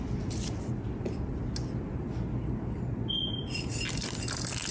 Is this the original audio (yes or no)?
yes